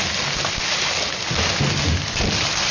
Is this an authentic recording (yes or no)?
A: yes